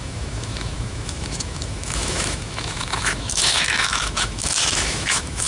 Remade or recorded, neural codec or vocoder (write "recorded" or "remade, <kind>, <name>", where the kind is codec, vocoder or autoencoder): remade, autoencoder, DAC-VAE